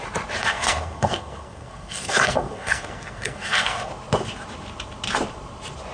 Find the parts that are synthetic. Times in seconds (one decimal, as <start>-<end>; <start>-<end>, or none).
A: 0.4-3.9